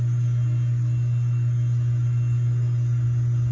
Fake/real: real